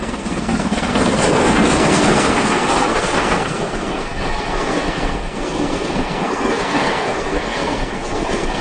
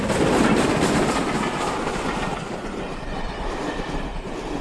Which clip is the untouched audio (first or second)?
second